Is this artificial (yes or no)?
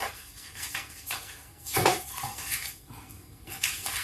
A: yes